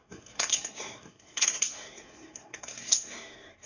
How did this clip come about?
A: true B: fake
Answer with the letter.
B